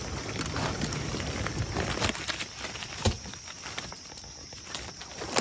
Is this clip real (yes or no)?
yes